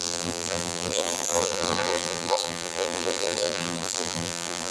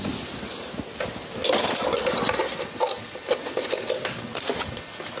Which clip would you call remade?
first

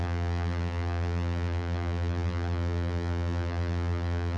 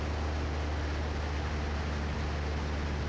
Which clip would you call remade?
first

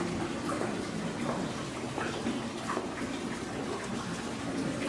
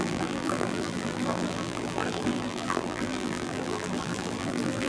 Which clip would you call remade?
second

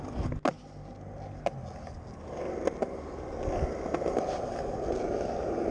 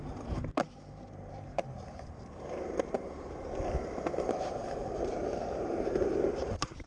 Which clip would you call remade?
second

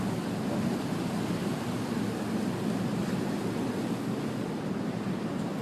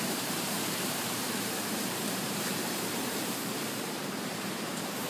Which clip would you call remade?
second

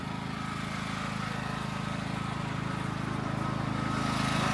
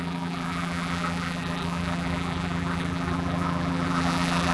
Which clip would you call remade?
second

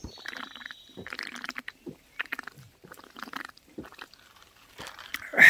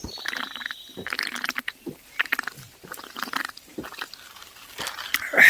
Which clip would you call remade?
first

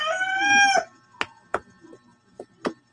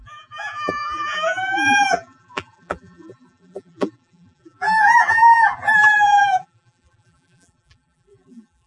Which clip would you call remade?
second